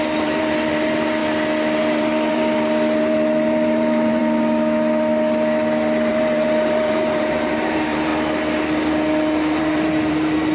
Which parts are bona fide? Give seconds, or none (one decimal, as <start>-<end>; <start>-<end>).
1.2-1.8; 4.2-6.1; 8.1-9.6